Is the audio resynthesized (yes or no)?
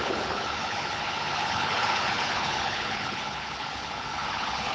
yes